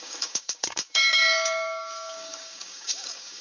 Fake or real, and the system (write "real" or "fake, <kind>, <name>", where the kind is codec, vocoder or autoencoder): fake, codec, DAC